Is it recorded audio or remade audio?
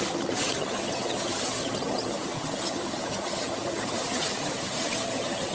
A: remade